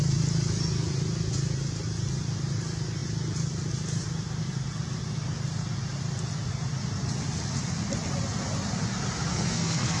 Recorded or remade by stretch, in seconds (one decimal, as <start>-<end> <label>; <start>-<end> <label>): 0.0-9.3 recorded; 9.3-10.0 remade